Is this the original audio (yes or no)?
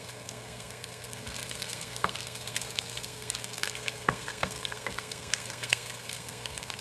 no